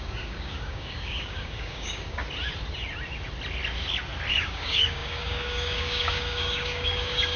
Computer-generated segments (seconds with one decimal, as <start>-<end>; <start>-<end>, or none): 0.0-2.2; 4.3-7.4